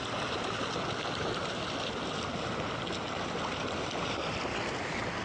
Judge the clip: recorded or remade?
recorded